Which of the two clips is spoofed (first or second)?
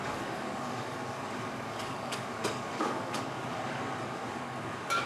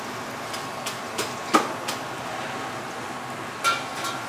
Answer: first